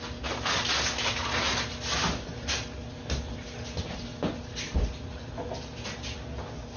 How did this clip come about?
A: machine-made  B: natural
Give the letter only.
B